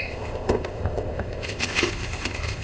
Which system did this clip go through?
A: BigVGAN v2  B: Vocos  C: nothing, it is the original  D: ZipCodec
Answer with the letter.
D